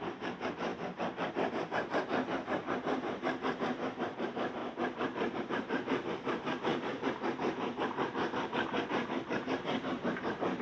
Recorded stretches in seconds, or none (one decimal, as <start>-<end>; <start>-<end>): 0.7-1.5; 4.6-5.4